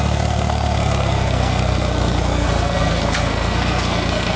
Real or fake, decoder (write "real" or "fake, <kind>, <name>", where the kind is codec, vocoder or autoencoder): fake, codec, SNAC